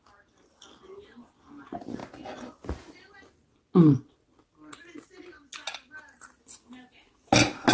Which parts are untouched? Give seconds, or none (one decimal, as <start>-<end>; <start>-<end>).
0.0-7.7

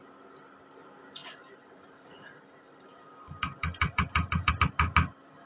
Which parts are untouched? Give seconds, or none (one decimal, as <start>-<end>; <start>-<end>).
0.0-1.2; 4.5-5.5

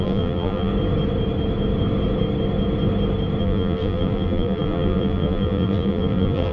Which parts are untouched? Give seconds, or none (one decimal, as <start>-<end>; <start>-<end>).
0.7-3.4

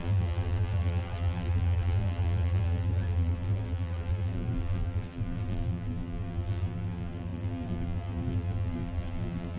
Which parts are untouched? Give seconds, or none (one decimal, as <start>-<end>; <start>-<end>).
none

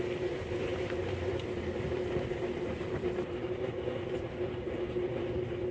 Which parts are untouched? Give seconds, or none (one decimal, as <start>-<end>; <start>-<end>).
0.0-0.7; 4.1-5.7

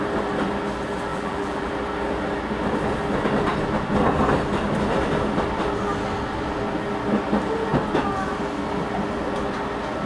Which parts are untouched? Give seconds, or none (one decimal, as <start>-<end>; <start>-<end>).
0.0-1.1; 1.7-10.1

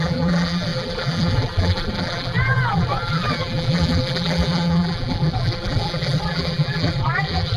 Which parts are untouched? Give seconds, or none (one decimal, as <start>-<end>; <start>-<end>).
none

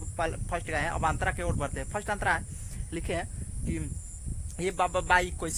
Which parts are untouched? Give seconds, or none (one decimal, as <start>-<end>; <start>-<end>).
3.4-4.3